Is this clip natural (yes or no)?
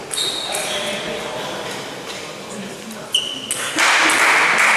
yes